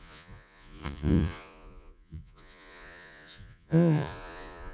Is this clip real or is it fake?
fake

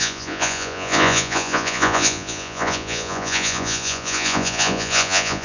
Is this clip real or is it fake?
fake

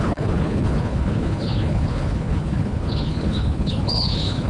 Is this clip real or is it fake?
fake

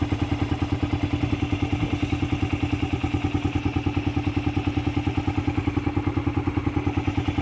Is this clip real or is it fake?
real